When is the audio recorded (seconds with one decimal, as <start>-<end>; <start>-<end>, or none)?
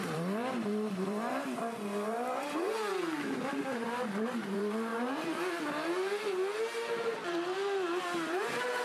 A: none